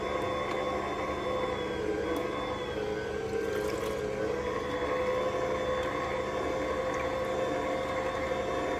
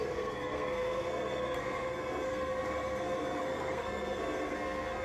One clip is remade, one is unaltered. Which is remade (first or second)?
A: second